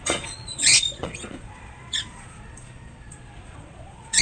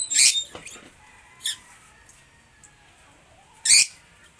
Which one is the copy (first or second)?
first